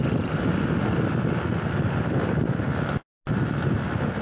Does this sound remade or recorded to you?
recorded